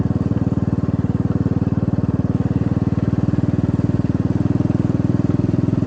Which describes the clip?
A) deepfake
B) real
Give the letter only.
B